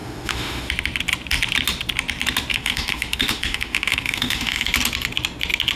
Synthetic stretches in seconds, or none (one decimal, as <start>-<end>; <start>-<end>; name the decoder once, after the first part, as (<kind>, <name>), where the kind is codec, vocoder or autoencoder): 0.0-0.7 (autoencoder, DAC-VAE); 2.5-4.7